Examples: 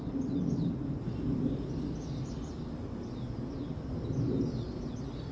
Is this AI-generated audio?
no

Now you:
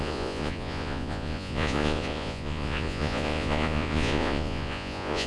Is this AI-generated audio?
yes